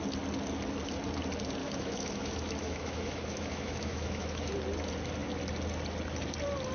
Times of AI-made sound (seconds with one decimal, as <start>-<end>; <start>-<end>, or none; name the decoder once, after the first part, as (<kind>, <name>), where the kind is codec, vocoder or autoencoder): 1.6-4.5 (autoencoder, DAC-VAE)